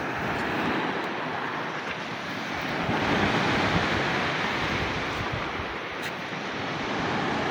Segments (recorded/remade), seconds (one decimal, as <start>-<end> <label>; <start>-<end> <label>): 0.0-7.5 recorded